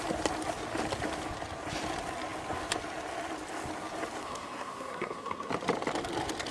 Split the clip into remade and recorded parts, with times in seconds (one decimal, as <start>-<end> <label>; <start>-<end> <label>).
0.0-4.2 recorded; 4.2-5.5 remade; 5.5-6.5 recorded